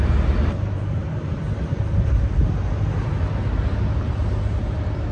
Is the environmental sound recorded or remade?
remade